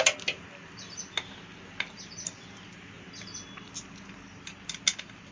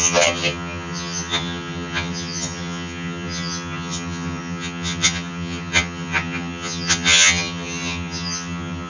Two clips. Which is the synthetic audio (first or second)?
second